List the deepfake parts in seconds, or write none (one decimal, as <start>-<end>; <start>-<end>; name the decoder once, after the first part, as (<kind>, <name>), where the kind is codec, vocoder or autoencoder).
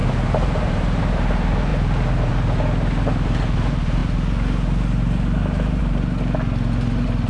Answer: 0.0-1.0 (vocoder, BigVGAN v2)